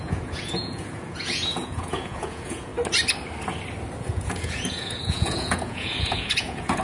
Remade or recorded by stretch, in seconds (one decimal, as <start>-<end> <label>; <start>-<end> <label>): 0.0-2.7 remade; 2.7-4.0 recorded; 4.0-6.8 remade